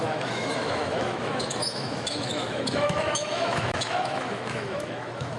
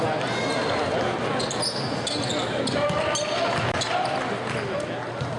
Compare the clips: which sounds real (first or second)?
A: second